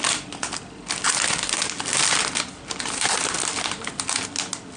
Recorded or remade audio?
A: recorded